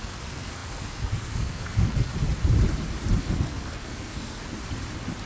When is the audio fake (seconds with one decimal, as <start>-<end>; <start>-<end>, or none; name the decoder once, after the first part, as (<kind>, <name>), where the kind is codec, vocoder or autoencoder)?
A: 0.0-2.1 (codec, SNAC); 3.2-4.4